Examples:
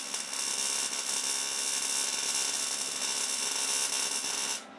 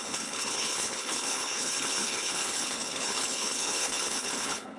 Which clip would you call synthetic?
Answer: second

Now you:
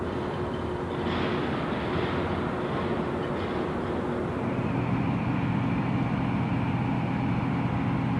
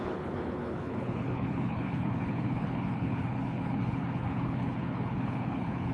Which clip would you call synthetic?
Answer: second